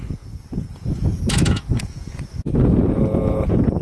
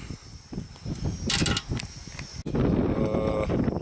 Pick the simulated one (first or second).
first